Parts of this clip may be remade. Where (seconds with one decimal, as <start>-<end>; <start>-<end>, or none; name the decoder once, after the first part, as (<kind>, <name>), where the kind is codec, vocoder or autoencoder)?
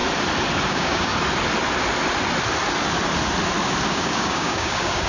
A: 0.7-1.1 (codec, DAC); 3.9-5.1